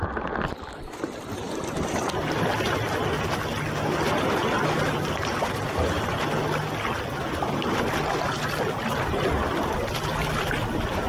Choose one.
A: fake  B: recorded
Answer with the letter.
B